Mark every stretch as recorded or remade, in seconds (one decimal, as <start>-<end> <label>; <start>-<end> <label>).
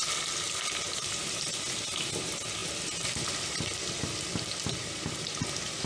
0.0-5.9 recorded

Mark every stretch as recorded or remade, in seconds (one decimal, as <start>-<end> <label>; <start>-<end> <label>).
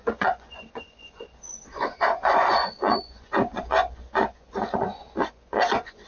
0.0-6.1 remade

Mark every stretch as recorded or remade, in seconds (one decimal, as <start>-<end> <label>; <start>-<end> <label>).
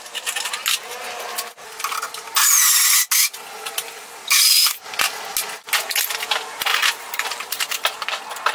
0.0-6.7 recorded; 6.7-8.0 remade; 8.0-8.5 recorded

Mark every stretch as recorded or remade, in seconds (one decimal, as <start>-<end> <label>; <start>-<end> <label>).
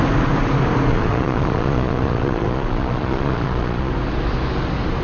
0.0-0.9 recorded; 0.9-3.9 remade; 3.9-5.0 recorded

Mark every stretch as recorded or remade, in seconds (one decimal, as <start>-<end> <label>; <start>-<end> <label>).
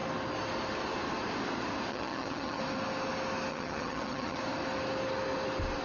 0.0-1.9 recorded; 1.9-2.6 remade; 2.6-3.5 recorded; 3.5-4.4 remade; 4.4-5.8 recorded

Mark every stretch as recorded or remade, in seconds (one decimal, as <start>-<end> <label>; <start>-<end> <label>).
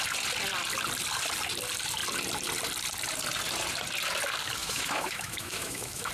0.0-4.6 recorded; 4.6-6.1 remade